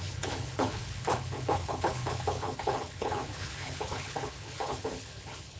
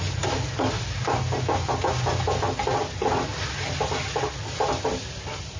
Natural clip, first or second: second